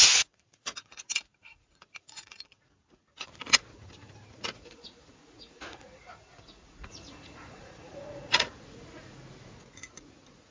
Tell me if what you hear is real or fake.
fake